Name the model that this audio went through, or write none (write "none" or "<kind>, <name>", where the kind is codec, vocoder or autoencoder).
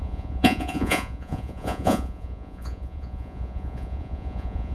vocoder, Vocos